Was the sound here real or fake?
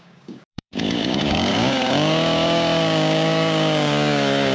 fake